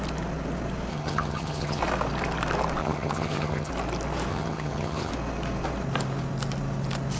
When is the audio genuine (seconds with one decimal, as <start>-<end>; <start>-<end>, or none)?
0.0-0.9; 1.8-2.8; 3.7-4.3; 5.1-7.2